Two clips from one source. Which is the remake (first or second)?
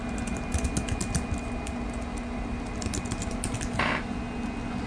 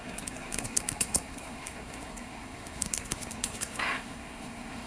second